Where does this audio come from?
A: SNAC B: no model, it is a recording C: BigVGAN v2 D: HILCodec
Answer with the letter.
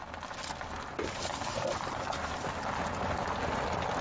B